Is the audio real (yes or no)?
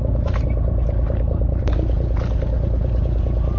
yes